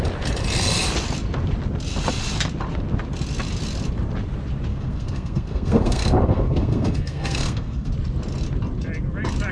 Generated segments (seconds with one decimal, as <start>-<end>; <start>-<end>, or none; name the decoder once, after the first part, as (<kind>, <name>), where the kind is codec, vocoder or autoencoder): 4.7-7.9 (codec, SNAC)

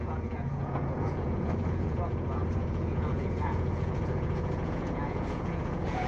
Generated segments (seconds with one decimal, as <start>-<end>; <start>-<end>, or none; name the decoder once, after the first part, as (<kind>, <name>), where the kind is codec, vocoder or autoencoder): 0.0-6.1 (vocoder, Vocos)

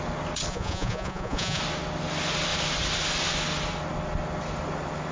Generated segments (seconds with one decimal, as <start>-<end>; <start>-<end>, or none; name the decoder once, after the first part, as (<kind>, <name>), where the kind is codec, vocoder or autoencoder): 0.5-1.6 (vocoder, Vocos)

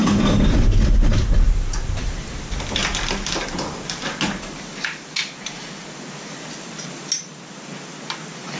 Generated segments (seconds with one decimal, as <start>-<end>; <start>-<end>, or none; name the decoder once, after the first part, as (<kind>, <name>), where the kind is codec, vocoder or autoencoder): 0.0-1.2 (vocoder, BigVGAN v2)